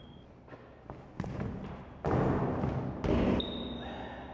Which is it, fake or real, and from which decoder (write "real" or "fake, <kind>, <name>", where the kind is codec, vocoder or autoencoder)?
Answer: real